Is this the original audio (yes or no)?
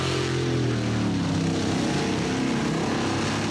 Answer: yes